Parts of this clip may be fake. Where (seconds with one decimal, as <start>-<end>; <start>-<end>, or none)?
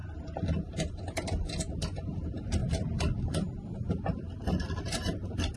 1.6-2.6; 4.8-5.6